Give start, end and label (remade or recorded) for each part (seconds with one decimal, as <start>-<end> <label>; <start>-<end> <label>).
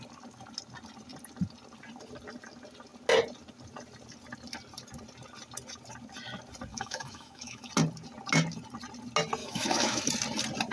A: 0.0-6.7 recorded; 6.7-7.7 remade; 7.7-9.4 recorded; 9.4-10.1 remade; 10.1-10.7 recorded